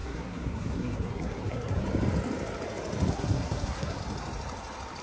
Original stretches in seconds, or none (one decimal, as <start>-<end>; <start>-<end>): 1.8-3.1; 4.0-5.0